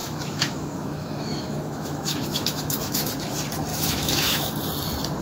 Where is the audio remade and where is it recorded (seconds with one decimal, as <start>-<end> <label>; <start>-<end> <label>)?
0.0-3.1 remade; 3.1-3.7 recorded; 3.7-4.5 remade; 4.5-5.2 recorded